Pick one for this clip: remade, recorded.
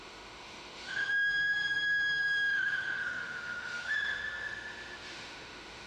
remade